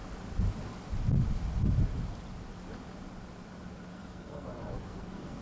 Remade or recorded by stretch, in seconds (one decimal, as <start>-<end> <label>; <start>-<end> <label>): 0.0-3.9 recorded; 3.9-5.4 remade

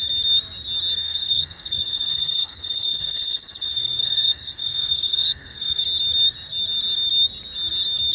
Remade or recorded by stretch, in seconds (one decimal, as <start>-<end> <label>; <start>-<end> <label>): 0.0-1.0 recorded; 1.0-5.8 remade; 5.8-8.1 recorded

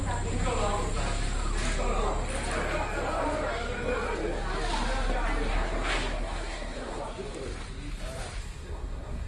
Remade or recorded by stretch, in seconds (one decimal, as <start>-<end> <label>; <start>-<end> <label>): 0.0-5.5 recorded; 5.5-7.0 remade; 7.0-8.4 recorded; 8.4-9.3 remade

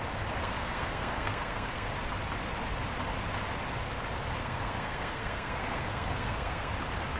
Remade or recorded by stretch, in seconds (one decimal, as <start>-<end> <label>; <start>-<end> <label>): 0.0-0.4 recorded; 0.4-1.9 remade; 1.9-4.4 recorded; 4.4-6.7 remade; 6.7-7.2 recorded